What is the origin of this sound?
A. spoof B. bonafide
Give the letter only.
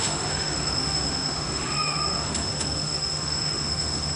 A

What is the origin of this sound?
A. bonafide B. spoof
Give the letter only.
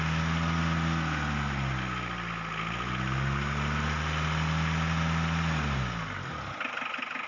A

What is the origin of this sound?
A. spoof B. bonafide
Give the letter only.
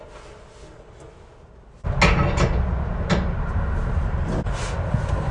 B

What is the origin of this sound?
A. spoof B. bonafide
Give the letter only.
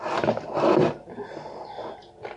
B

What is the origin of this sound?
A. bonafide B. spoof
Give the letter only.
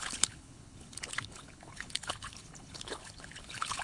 B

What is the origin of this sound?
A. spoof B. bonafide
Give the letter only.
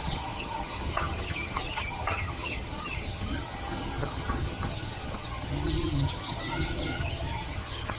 A